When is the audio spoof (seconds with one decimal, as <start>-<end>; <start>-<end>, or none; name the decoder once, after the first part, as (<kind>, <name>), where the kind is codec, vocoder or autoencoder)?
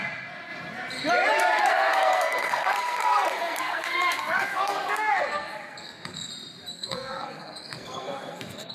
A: 1.7-6.3 (codec, SNAC); 6.7-8.7